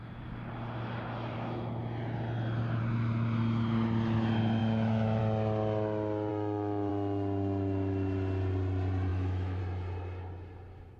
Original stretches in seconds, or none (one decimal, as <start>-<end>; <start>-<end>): 0.0-4.6; 5.2-6.3; 6.9-9.1; 9.6-11.0